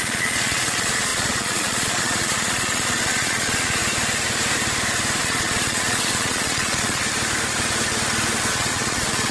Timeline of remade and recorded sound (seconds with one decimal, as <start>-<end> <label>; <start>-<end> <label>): 0.0-3.8 remade; 3.8-5.2 recorded; 5.2-7.0 remade; 7.0-8.5 recorded; 8.5-9.3 remade